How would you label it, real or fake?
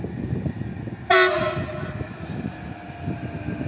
real